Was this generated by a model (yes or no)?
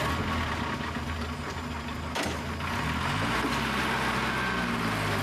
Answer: no